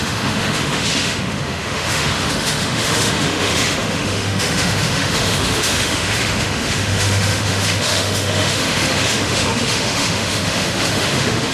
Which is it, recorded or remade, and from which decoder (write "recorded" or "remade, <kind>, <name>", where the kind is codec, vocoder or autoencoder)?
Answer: remade, autoencoder, DAC-VAE